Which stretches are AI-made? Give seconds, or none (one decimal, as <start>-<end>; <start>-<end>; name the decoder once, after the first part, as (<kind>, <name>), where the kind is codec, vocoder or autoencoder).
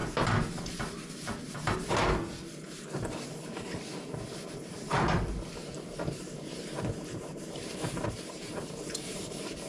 5.6-9.7 (vocoder, BigVGAN v2)